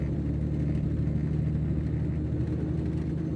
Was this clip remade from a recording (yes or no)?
no